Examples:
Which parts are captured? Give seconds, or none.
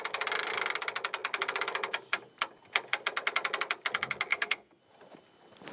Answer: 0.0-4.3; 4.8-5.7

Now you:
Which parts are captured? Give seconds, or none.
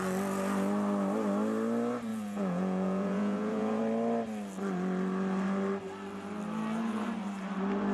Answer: 0.0-2.1; 3.8-7.9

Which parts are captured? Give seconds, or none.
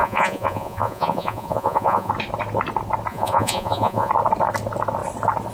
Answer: 2.1-3.1; 4.1-5.5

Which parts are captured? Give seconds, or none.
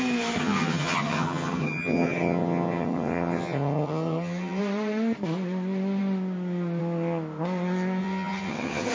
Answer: 0.0-0.4; 4.6-8.0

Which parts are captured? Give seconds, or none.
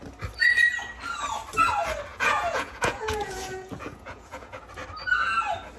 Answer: 0.0-2.1; 4.6-5.8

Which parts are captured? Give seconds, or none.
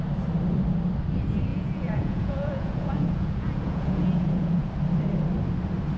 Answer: 0.0-1.5; 4.7-6.0